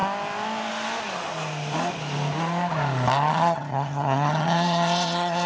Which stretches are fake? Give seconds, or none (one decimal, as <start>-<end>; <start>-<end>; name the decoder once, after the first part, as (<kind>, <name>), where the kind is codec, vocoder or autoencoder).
3.3-5.5 (vocoder, HiFi-GAN)

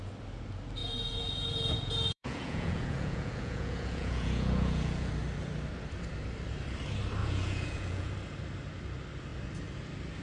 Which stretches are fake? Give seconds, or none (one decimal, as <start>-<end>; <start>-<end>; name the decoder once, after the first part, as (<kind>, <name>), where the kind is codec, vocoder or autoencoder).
0.8-5.1 (vocoder, Vocos); 7.2-8.1

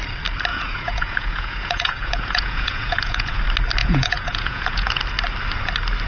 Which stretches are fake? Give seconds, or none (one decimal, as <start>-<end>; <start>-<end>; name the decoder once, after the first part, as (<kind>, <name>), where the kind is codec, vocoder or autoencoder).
0.5-3.4 (vocoder, Vocos); 3.8-5.0

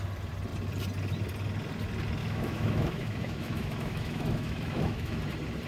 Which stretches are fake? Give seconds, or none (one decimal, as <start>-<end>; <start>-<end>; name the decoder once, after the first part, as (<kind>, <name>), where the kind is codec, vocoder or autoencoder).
2.2-5.2 (autoencoder, DAC-VAE)

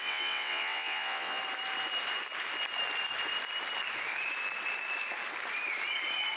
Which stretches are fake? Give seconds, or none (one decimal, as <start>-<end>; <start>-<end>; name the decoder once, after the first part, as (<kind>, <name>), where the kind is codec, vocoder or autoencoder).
0.0-1.4 (vocoder, WaveNeXt)

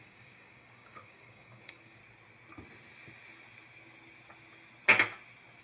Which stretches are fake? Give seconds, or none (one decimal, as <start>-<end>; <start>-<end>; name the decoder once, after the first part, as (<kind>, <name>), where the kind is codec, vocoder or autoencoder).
0.0-2.0 (codec, DAC)